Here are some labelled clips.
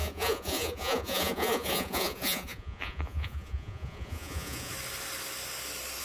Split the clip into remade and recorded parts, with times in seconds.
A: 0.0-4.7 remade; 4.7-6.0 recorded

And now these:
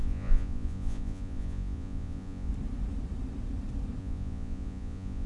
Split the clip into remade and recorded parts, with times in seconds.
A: 0.0-2.5 remade; 2.5-4.0 recorded; 4.0-5.3 remade

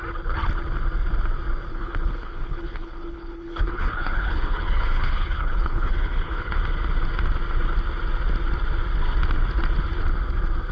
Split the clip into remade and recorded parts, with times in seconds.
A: 0.0-1.7 recorded; 1.7-6.6 remade; 6.6-10.7 recorded

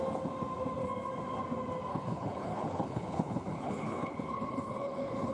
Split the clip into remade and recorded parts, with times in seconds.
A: 0.0-1.9 recorded; 1.9-5.3 remade